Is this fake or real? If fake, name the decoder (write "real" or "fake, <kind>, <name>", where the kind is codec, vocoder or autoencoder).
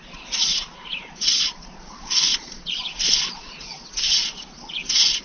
fake, vocoder, Vocos